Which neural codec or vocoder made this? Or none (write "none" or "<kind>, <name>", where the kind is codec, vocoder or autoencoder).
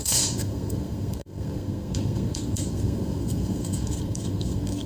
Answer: codec, SNAC